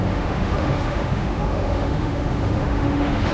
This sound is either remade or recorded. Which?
remade